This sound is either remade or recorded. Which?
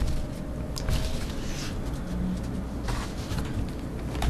recorded